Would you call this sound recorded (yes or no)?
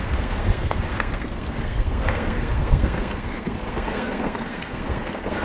no